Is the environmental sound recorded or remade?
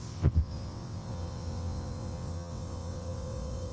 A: remade